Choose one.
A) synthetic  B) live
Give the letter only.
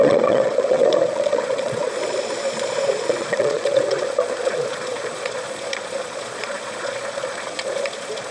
A